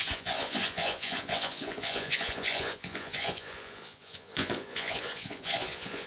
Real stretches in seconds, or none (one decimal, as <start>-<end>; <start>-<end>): none